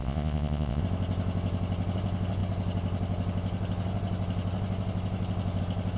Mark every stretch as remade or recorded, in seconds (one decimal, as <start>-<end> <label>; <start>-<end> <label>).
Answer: 0.0-0.8 remade; 0.8-6.0 recorded